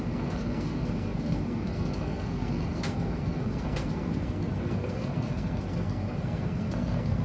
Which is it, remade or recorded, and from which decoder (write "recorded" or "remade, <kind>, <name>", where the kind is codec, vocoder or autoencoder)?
remade, codec, SNAC